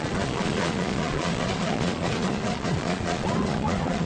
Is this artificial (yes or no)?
yes